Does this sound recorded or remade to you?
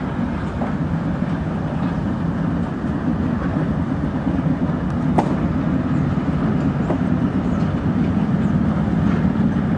recorded